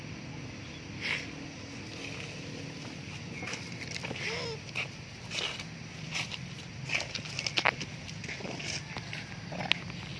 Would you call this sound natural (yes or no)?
yes